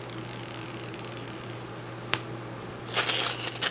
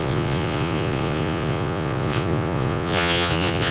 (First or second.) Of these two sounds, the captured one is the first